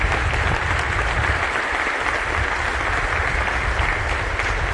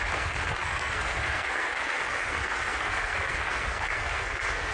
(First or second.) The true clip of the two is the first